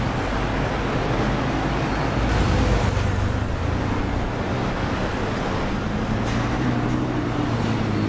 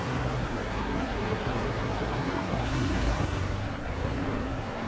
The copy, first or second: second